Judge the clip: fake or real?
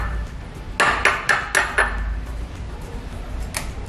real